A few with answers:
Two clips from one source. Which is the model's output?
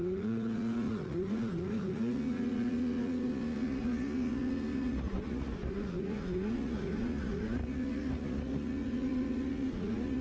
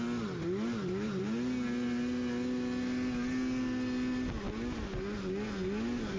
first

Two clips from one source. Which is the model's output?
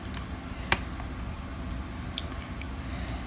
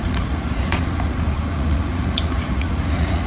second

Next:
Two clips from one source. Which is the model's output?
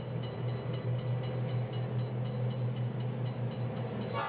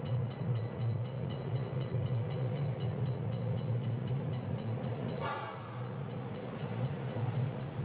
second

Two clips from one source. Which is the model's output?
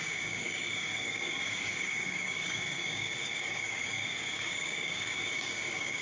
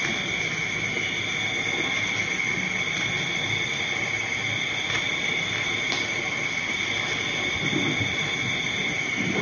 first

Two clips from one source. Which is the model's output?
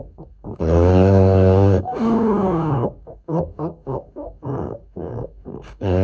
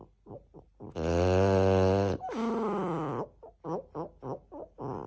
first